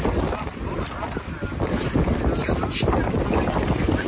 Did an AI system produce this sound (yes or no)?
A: no